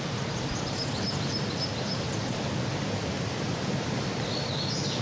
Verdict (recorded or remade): recorded